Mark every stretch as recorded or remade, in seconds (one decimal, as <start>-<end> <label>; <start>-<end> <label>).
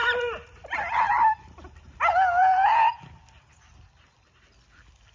0.0-2.4 recorded; 2.4-3.0 remade; 3.0-5.1 recorded